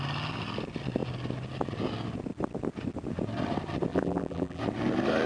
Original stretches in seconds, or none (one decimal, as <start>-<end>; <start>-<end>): 0.0-3.9; 4.6-5.3

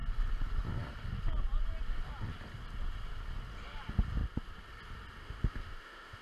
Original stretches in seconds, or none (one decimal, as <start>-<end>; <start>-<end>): 0.0-5.2

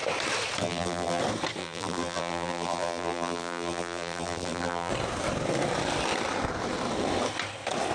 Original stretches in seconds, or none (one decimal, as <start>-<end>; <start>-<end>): 0.0-0.6; 1.2-1.6; 4.9-7.9

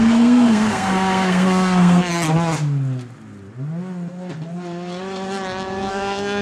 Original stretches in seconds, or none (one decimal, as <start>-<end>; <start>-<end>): 2.1-5.9

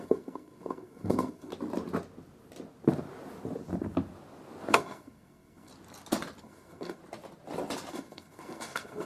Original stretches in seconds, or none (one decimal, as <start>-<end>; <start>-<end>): 1.5-4.7; 5.7-6.4; 7.0-7.9

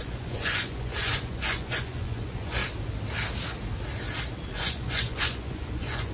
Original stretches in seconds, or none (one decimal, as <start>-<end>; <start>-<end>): 2.6-4.5